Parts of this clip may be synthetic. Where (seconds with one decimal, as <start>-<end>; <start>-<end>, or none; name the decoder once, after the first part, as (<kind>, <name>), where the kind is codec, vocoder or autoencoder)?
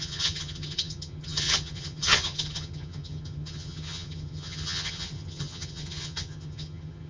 0.0-7.1 (vocoder, HiFi-GAN)